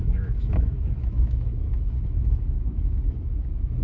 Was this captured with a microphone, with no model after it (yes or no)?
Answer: no